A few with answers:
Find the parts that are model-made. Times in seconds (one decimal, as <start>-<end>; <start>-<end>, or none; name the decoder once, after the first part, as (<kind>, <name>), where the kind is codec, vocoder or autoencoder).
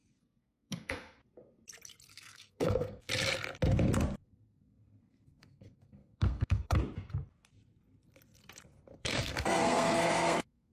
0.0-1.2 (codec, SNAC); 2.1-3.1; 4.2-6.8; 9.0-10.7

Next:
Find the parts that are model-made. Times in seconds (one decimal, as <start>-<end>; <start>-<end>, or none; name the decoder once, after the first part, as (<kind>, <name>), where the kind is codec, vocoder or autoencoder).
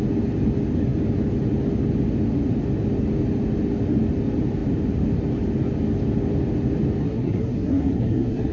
7.0-8.5 (codec, SNAC)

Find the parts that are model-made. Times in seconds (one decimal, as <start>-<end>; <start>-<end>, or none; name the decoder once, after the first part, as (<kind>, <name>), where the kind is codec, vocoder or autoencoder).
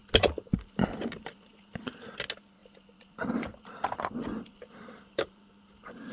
2.6-5.5 (vocoder, BigVGAN v2)